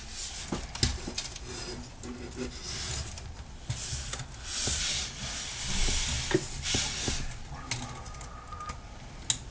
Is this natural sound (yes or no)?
yes